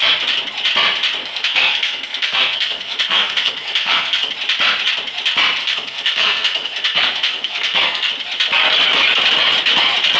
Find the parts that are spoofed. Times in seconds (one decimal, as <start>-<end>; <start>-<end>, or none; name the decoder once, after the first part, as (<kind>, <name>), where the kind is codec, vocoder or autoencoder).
1.2-4.3 (codec, SNAC); 5.6-8.1